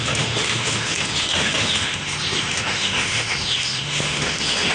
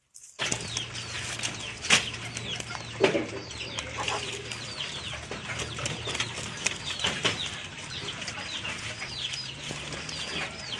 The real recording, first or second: second